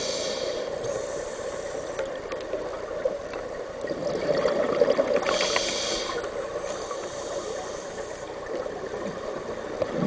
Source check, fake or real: real